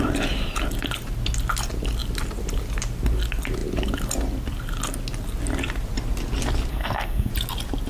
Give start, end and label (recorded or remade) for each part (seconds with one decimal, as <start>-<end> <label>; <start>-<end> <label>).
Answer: 0.0-6.7 recorded; 6.7-7.3 remade; 7.3-7.9 recorded